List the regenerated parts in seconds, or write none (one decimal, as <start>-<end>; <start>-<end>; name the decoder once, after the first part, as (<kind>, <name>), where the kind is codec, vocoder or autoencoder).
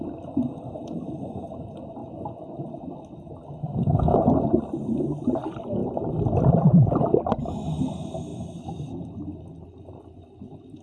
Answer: 3.6-4.2 (codec, SNAC)